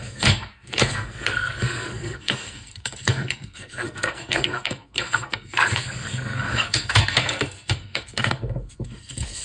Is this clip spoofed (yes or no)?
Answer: yes